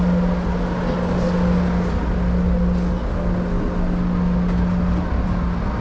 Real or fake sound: real